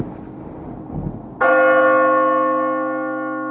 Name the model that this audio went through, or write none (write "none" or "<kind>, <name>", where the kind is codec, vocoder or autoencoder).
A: none